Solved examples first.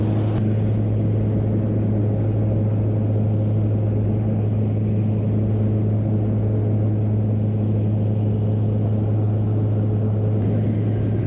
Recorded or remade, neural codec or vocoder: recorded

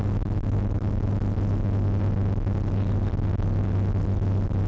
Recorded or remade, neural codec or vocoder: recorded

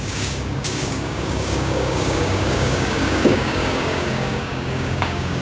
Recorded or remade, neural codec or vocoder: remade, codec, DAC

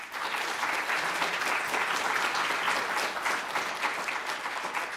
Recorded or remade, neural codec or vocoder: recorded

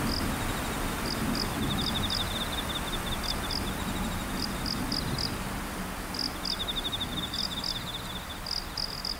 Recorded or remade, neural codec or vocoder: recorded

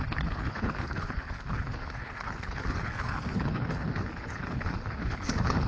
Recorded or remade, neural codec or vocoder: remade, codec, HILCodec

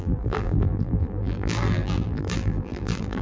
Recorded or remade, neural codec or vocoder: remade, vocoder, BigVGAN v2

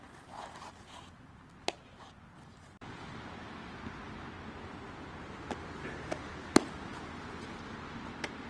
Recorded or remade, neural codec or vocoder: recorded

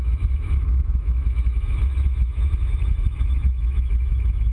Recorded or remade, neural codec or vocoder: remade, autoencoder, DAC-VAE